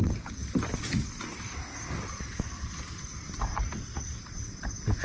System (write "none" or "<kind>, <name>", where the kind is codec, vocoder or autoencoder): none